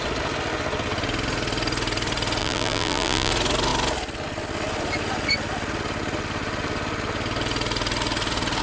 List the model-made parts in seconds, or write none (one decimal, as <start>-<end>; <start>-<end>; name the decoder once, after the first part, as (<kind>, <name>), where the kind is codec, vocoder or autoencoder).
2.4-3.3 (vocoder, BigVGAN v2)